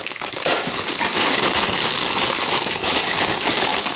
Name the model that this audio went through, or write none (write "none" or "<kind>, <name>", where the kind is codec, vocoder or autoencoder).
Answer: codec, DAC